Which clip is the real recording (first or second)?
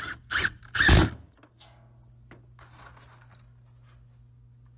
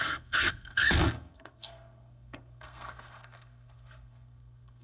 first